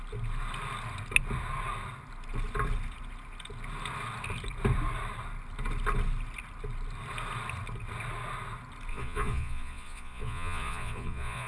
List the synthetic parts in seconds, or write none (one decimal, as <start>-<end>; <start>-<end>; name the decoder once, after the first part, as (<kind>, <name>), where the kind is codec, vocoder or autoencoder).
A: 8.9-11.5 (vocoder, Vocos)